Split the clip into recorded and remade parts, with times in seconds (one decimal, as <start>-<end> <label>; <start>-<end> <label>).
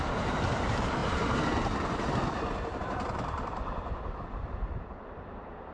0.0-1.0 remade; 1.0-2.8 recorded; 2.8-5.7 remade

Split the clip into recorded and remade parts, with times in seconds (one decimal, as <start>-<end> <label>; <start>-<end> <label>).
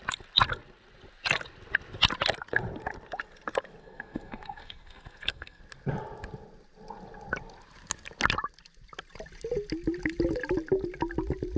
0.0-3.8 recorded; 3.8-5.6 remade; 5.6-11.6 recorded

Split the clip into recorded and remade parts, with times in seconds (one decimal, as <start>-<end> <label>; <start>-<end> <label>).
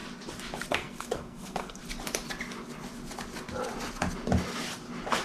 0.0-0.7 recorded; 0.7-1.8 remade; 1.8-5.2 recorded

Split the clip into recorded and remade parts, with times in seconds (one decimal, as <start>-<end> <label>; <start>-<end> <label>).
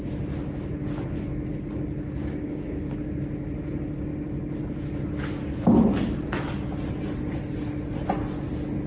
0.0-2.2 recorded; 2.2-3.0 remade; 3.0-8.9 recorded